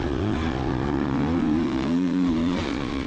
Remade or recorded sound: remade